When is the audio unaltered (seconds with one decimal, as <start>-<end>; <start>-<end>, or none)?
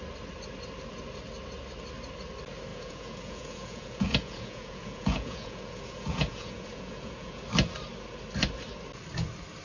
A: 0.0-2.7; 7.4-9.6